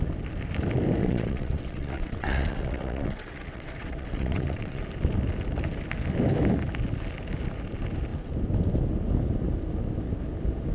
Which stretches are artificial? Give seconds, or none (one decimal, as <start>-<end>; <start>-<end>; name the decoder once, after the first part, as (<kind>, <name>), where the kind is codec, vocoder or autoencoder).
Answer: 1.0-4.8 (vocoder, WaveNeXt)